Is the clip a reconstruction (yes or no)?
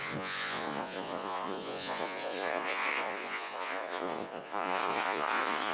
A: yes